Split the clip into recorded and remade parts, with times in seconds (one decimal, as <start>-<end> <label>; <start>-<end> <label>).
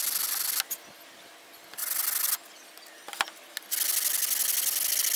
0.0-5.2 recorded